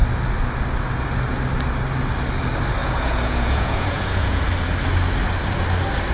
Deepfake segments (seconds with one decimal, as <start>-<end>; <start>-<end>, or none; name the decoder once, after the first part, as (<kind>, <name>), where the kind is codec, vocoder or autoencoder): 2.8-4.4 (vocoder, Vocos)